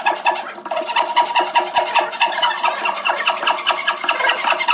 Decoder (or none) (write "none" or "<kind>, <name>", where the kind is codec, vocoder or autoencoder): none